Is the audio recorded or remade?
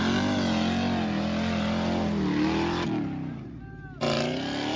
recorded